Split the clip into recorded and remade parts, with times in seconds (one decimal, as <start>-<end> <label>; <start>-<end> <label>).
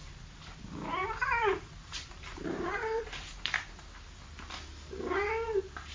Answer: 0.0-0.6 remade; 0.6-1.0 recorded; 1.0-3.7 remade; 3.7-5.9 recorded